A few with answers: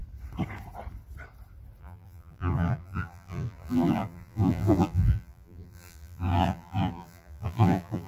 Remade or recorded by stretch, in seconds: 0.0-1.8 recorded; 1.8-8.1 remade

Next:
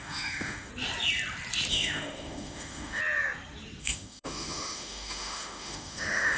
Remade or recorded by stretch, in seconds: 0.0-0.7 remade; 0.7-1.7 recorded; 1.7-3.0 remade; 3.0-3.8 recorded; 3.8-6.4 remade